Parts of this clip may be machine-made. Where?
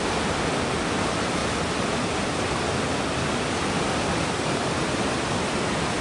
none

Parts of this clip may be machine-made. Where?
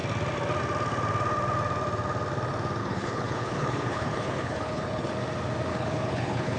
2.8-5.1 (codec, HILCodec); 5.7-6.6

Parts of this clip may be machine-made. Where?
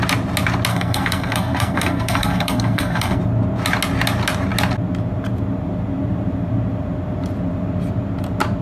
0.7-3.2 (codec, SNAC)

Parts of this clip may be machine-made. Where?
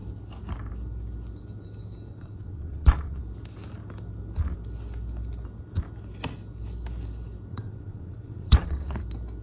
2.1-3.2 (vocoder, WaveNeXt); 7.5-9.0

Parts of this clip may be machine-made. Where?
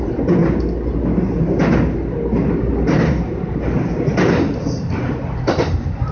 none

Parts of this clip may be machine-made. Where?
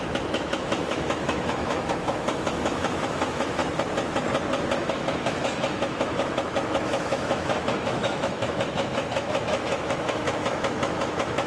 0.0-3.6 (autoencoder, DAC-VAE); 4.8-11.5